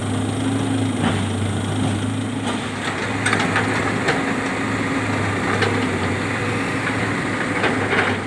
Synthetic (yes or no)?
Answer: no